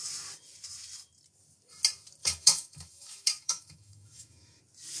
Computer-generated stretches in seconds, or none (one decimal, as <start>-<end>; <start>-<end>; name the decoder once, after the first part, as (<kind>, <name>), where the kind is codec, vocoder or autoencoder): 2.2-4.6 (autoencoder, DAC-VAE)